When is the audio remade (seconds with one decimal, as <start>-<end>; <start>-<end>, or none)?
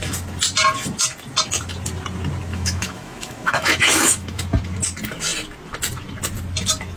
2.5-4.4